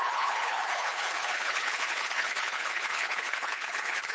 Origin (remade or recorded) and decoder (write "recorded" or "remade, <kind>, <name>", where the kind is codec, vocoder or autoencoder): remade, codec, HILCodec